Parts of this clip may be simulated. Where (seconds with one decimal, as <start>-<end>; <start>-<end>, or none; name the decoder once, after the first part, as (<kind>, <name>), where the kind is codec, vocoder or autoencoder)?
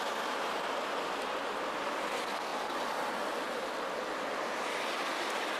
none